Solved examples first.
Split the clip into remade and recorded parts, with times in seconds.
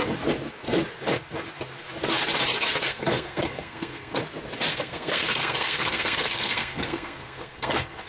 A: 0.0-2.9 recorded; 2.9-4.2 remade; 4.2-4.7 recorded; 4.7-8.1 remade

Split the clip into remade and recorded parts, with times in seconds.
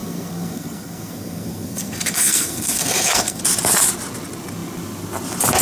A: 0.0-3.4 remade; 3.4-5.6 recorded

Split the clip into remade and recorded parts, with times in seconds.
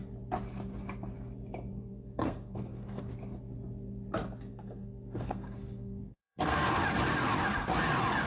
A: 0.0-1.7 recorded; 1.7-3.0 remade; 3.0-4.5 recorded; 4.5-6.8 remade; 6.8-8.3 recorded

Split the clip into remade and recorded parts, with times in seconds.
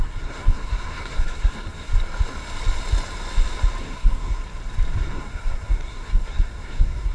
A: 0.0-1.9 remade; 1.9-3.8 recorded; 3.8-4.4 remade; 4.4-5.0 recorded; 5.0-7.1 remade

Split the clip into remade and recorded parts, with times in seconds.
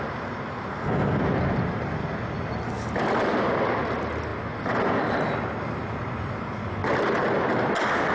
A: 0.0-0.7 recorded; 0.7-1.2 remade; 1.2-8.1 recorded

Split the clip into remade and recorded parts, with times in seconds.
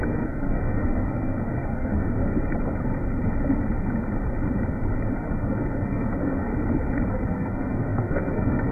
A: 0.0-2.2 remade; 2.2-5.1 recorded; 5.1-6.5 remade; 6.5-7.1 recorded; 7.1-8.7 remade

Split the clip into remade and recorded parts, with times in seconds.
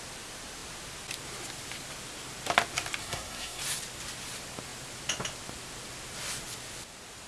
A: 0.0-3.0 recorded; 3.0-3.6 remade; 3.6-7.3 recorded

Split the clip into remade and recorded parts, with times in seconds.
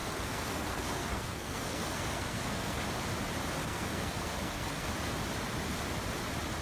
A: 0.0-2.8 remade; 2.8-3.6 recorded; 3.6-4.9 remade; 4.9-6.6 recorded